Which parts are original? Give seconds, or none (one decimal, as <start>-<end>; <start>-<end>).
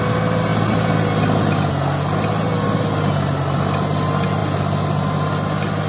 0.0-5.9